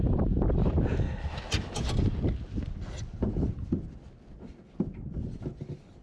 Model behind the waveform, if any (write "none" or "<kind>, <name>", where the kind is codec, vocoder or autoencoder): none